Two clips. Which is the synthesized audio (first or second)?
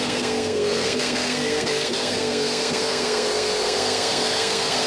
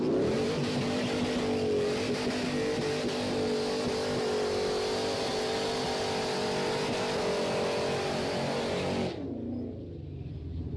first